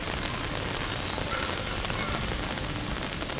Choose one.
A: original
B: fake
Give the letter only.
A